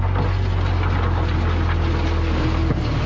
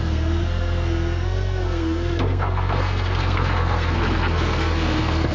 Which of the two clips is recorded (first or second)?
first